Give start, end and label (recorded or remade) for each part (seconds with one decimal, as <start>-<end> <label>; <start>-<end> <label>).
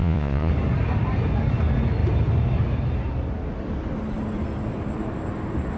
0.0-0.5 remade; 0.5-5.8 recorded